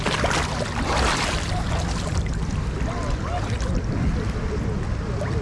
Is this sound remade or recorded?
recorded